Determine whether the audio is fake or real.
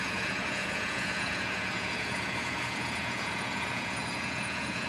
fake